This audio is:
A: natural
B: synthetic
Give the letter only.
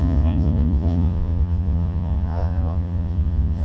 B